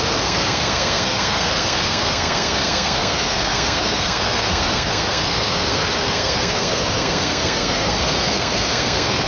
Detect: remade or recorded remade